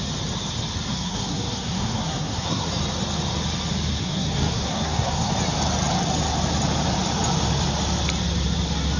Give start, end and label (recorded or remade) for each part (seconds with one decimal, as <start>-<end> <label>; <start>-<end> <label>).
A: 0.0-0.9 recorded; 0.9-2.7 remade; 2.7-4.0 recorded; 4.0-5.3 remade; 5.3-9.0 recorded